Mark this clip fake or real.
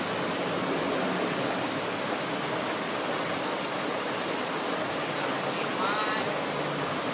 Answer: real